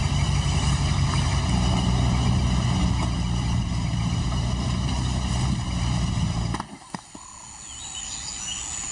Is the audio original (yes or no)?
yes